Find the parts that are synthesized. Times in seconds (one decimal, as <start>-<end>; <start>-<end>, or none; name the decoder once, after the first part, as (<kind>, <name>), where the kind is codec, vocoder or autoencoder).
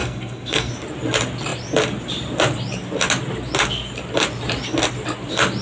0.0-0.7 (codec, SNAC)